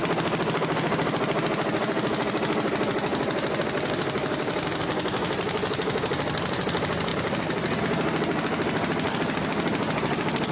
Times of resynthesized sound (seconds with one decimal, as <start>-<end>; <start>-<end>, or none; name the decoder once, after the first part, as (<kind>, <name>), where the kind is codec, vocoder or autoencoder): none